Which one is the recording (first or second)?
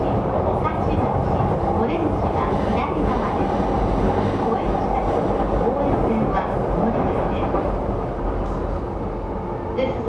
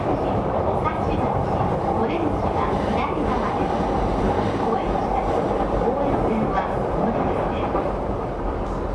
first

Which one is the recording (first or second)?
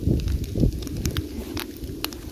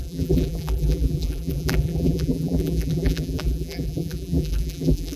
first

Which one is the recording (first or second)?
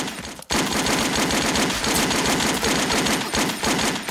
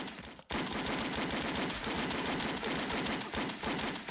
first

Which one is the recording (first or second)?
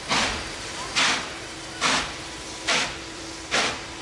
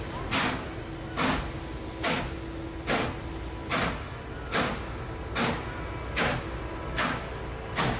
second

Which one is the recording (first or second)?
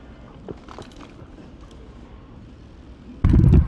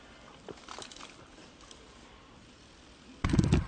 first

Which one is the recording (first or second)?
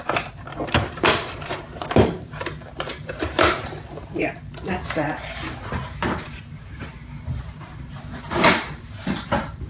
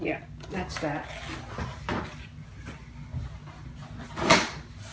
second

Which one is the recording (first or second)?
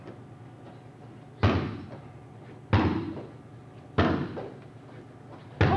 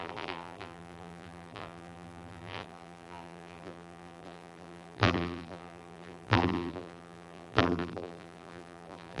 first